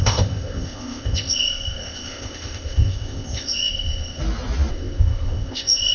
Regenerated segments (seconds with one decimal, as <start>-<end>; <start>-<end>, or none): 0.0-4.2; 4.7-5.9